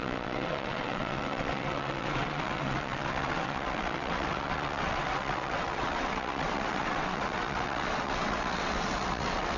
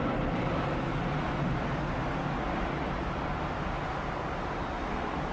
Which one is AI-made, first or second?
first